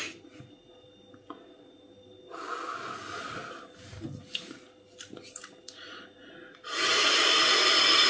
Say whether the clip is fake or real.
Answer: real